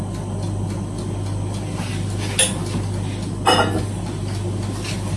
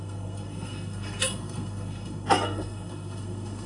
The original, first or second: first